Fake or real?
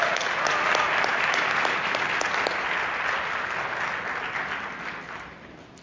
real